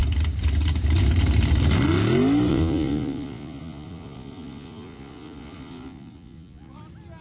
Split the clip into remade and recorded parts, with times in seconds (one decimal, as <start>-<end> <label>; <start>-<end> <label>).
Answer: 0.0-2.5 recorded; 2.5-6.8 remade; 6.8-7.2 recorded